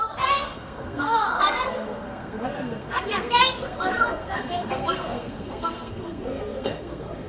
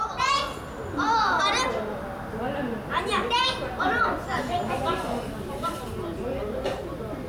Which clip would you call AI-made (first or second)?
first